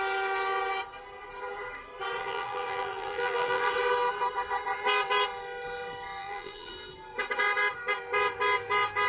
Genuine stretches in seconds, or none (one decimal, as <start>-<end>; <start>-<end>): 0.0-2.2; 3.7-6.2; 6.7-9.1